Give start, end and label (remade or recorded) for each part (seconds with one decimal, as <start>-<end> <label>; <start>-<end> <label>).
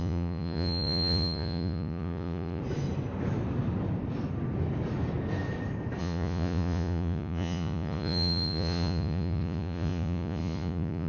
0.0-2.6 remade; 2.6-6.0 recorded; 6.0-11.1 remade